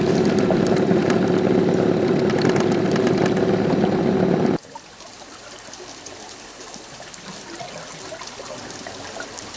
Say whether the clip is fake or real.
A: real